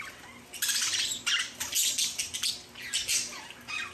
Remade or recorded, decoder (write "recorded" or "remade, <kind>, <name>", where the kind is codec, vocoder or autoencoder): recorded